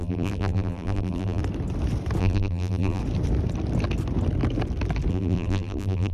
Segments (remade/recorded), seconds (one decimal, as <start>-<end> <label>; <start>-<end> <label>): 0.0-1.4 remade; 1.4-2.2 recorded; 2.2-3.0 remade; 3.0-5.1 recorded; 5.1-6.1 remade